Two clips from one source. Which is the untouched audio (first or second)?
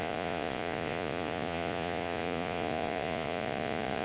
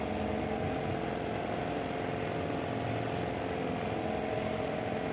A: second